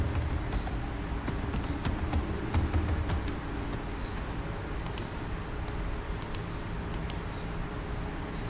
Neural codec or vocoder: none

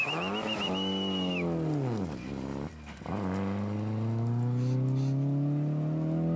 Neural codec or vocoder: none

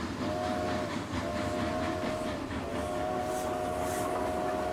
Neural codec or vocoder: none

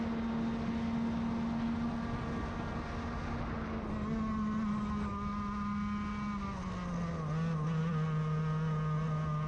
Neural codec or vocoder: none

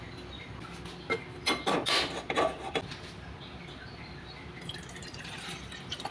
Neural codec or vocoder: none